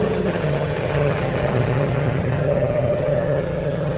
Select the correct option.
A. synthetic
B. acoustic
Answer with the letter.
A